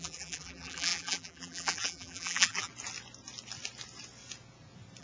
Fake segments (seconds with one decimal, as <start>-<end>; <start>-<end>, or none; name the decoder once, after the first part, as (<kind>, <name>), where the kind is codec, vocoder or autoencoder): 0.0-2.7 (vocoder, BigVGAN v2)

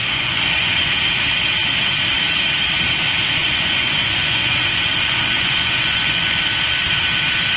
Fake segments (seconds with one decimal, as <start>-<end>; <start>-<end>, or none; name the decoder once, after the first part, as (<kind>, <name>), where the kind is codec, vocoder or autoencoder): 0.0-0.9 (vocoder, Vocos); 3.4-6.4

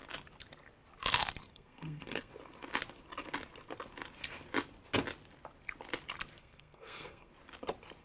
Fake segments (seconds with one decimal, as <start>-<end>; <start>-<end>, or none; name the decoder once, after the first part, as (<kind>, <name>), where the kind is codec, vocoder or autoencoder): 1.5-2.3 (codec, SNAC); 6.4-7.3

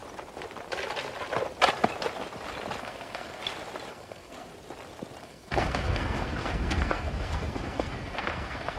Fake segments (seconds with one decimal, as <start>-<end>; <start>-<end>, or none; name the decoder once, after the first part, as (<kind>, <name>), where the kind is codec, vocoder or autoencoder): 2.8-3.4 (codec, SNAC); 3.9-4.5; 5.2-8.8

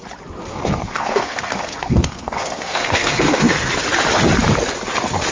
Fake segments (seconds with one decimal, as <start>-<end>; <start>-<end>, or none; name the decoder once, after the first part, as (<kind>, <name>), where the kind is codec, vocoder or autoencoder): 0.5-3.7 (codec, SNAC)

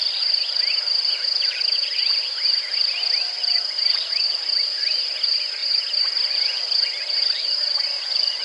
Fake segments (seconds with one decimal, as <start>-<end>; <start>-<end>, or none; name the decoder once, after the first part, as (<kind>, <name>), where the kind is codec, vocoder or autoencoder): none